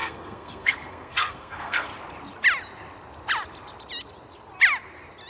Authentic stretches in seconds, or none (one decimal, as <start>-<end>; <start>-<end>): 1.9-5.3